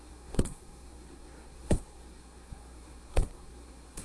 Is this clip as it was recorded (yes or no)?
no